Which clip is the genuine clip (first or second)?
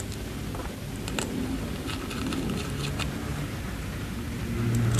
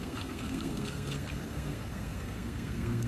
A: first